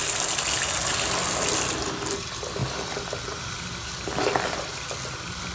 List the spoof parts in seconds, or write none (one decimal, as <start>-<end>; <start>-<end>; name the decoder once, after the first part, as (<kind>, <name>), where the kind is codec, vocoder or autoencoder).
none